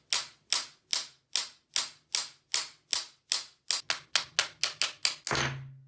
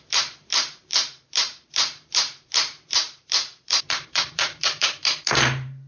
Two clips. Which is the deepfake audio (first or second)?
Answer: second